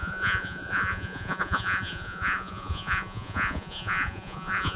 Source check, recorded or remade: remade